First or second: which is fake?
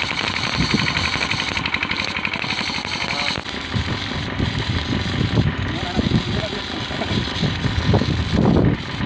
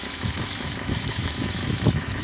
second